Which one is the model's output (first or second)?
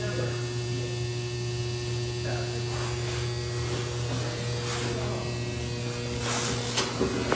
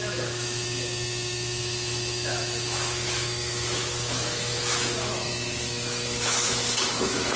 second